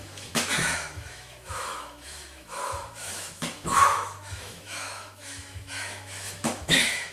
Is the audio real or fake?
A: fake